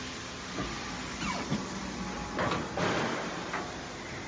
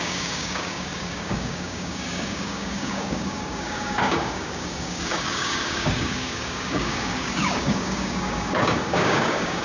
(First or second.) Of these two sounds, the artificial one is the second